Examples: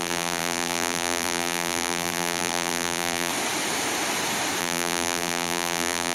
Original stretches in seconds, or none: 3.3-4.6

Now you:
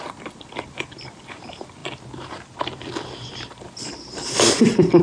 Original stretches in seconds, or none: none

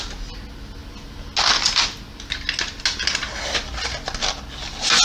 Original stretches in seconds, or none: 0.0-5.0

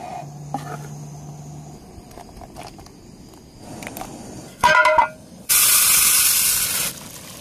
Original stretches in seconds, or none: 0.0-4.5; 5.0-7.4

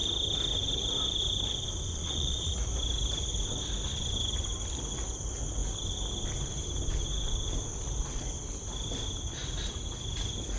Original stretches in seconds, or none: 0.0-1.9; 2.5-10.6

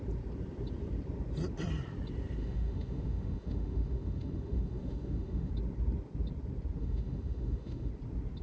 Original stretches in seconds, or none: 0.0-2.4; 5.5-6.8; 7.9-8.4

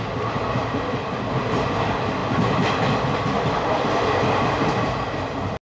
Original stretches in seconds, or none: 0.0-5.7